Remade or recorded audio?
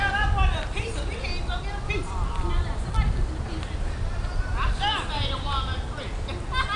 recorded